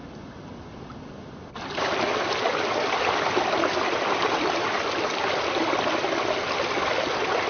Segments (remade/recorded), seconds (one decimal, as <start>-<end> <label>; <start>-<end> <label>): 0.0-7.5 recorded